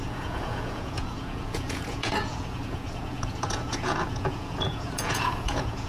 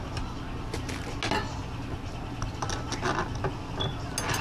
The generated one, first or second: first